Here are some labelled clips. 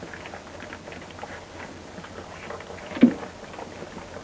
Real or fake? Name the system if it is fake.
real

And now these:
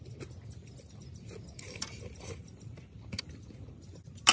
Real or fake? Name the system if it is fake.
real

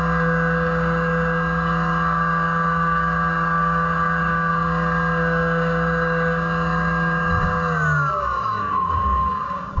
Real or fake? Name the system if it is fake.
fake, codec, DAC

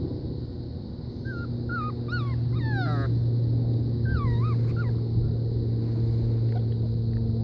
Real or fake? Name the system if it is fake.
real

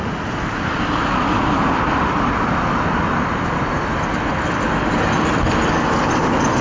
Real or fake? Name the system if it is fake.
real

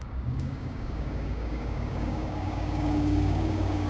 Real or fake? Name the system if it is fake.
fake, codec, DAC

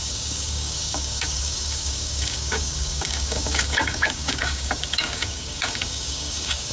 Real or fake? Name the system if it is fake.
fake, codec, DAC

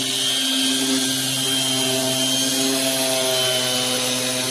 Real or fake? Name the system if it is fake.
real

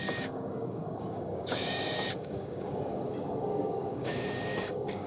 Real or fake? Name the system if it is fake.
fake, codec, DAC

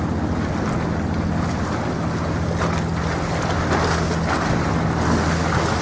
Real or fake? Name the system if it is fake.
real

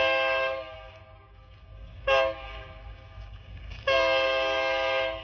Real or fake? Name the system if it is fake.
fake, codec, DAC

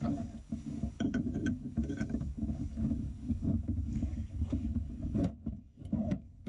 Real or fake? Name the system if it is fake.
fake, codec, DAC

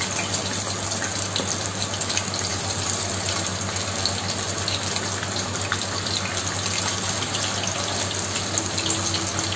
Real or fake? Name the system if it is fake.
real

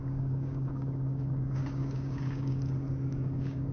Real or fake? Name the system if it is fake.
fake, codec, DAC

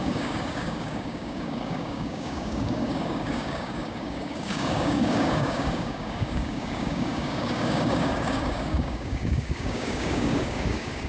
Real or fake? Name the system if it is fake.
fake, codec, DAC